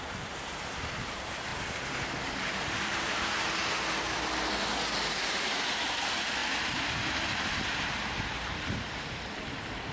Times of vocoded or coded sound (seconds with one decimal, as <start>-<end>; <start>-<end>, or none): 0.0-1.5; 2.6-3.6; 5.4-9.9